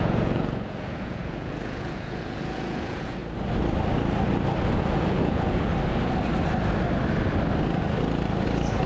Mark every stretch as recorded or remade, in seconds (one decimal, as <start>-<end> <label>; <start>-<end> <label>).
0.0-3.2 remade; 3.2-4.8 recorded; 4.8-5.7 remade; 5.7-8.9 recorded